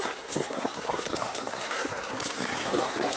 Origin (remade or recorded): remade